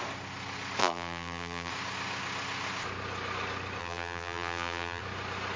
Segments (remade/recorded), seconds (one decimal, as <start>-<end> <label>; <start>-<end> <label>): 0.0-0.8 recorded; 0.8-1.7 remade; 1.7-3.8 recorded; 3.8-5.0 remade; 5.0-5.6 recorded